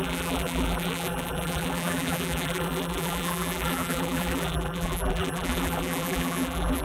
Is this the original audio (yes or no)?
no